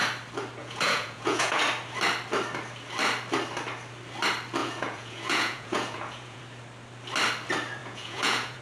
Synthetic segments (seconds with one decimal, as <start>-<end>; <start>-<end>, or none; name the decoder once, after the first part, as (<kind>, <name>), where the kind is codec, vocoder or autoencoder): 0.6-1.6 (vocoder, Vocos); 4.6-6.4; 7.8-8.6